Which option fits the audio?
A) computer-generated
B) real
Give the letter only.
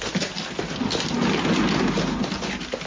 B